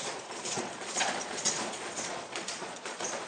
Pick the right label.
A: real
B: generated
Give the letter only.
B